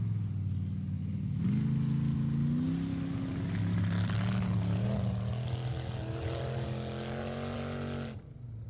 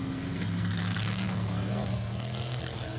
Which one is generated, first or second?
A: second